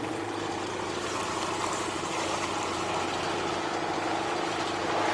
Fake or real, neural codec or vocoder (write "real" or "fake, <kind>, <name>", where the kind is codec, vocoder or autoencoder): real